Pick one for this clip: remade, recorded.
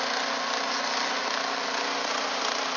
recorded